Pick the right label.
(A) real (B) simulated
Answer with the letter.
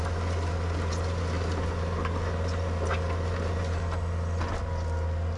A